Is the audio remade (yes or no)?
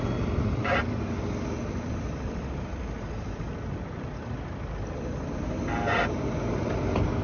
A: no